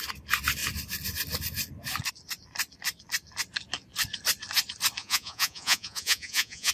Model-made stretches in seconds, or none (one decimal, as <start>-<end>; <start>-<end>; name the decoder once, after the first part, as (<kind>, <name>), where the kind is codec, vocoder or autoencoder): 5.0-6.7 (vocoder, Vocos)